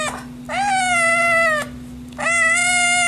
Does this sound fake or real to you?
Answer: real